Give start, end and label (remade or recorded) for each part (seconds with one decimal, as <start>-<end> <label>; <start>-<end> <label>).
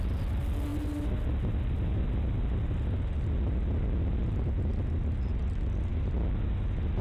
0.0-7.0 recorded